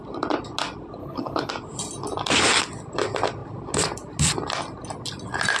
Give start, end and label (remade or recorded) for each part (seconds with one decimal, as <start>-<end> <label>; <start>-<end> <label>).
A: 0.0-1.0 recorded; 1.0-1.5 remade; 1.5-5.6 recorded